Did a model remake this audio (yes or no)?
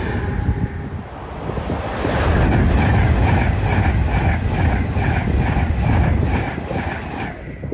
no